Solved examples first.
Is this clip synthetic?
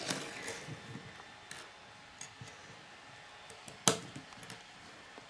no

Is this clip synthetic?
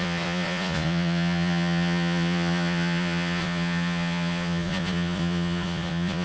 yes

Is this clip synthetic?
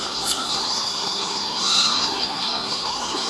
yes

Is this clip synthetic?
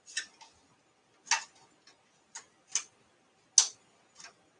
no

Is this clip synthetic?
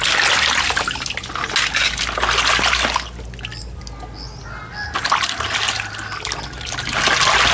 no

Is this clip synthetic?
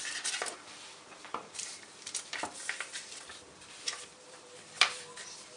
yes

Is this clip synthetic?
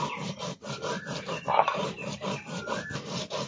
no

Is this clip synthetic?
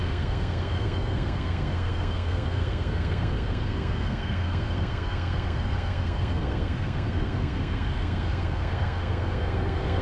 yes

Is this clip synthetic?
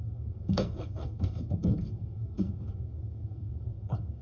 yes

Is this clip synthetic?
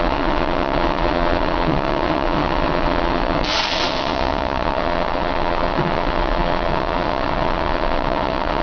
yes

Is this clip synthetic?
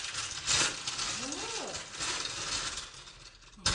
no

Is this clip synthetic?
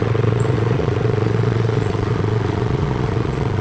yes